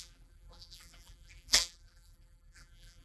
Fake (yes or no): yes